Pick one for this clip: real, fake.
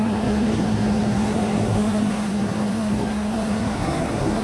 fake